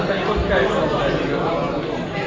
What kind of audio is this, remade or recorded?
recorded